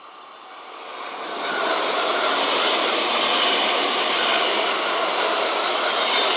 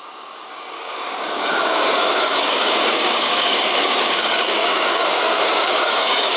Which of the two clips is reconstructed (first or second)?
second